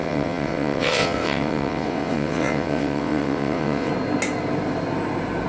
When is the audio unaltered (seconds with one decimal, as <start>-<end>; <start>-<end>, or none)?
3.9-5.5